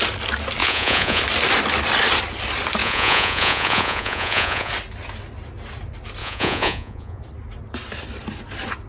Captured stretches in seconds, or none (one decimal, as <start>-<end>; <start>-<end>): 0.0-0.6; 1.2-2.8; 4.7-6.2; 7.2-8.9